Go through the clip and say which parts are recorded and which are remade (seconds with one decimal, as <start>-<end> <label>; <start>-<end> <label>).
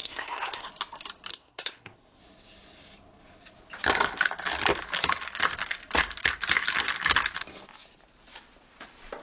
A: 0.0-0.7 remade; 0.7-1.3 recorded; 1.3-2.2 remade; 2.2-9.2 recorded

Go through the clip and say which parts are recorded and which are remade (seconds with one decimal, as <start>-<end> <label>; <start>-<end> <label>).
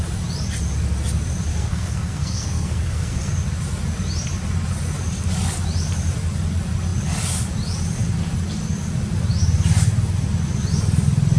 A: 0.0-1.5 recorded; 1.5-3.3 remade; 3.3-11.4 recorded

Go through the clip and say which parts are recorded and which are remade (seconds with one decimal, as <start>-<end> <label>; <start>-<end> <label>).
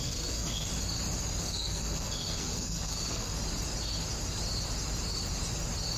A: 0.0-0.7 remade; 0.7-1.4 recorded; 1.4-3.3 remade; 3.3-6.0 recorded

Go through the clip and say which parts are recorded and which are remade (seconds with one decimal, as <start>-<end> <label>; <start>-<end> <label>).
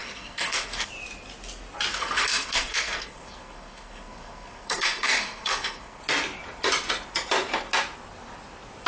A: 0.0-0.9 remade; 0.9-1.9 recorded; 1.9-6.0 remade; 6.0-8.9 recorded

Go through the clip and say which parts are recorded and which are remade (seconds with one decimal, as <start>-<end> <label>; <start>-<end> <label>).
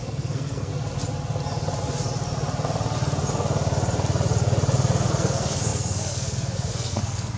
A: 0.0-0.7 remade; 0.7-5.1 recorded; 5.1-7.4 remade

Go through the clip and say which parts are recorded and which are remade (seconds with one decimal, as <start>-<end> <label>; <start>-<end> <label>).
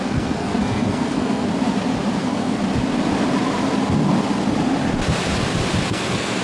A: 0.0-1.5 remade; 1.5-2.2 recorded; 2.2-2.6 remade; 2.6-5.9 recorded; 5.9-6.4 remade